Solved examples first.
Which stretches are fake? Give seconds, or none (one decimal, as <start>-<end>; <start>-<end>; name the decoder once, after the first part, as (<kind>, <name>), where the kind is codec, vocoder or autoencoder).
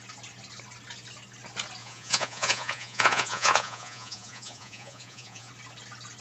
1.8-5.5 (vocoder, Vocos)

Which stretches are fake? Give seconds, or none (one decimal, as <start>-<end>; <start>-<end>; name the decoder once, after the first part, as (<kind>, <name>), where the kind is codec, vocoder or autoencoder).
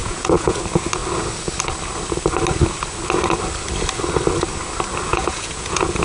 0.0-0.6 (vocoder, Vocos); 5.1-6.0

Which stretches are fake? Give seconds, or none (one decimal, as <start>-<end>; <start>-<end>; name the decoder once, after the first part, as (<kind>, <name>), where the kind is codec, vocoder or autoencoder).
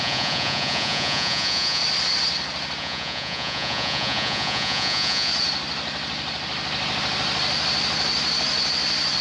0.0-1.8 (vocoder, Vocos); 2.8-5.3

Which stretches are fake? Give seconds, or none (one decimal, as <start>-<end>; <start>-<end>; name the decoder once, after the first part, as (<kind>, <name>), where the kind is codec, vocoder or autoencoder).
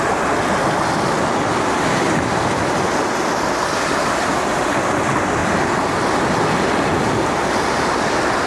none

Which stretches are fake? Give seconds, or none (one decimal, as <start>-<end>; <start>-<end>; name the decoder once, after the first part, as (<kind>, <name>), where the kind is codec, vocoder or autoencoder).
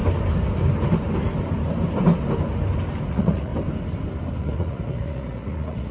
3.1-3.5 (vocoder, Vocos); 4.3-5.9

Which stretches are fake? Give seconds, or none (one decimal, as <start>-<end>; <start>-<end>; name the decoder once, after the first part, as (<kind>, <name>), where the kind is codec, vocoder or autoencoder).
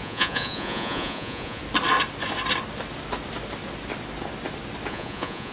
0.0-1.6 (vocoder, Vocos); 4.9-5.5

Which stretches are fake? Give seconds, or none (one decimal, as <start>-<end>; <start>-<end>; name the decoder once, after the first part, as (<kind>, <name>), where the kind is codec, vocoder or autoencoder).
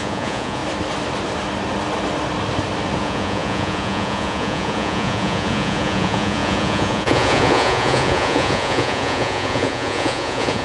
0.0-0.6 (vocoder, Vocos); 3.0-10.6